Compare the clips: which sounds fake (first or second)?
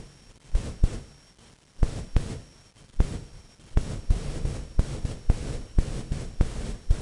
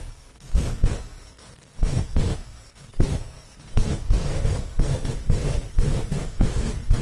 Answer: second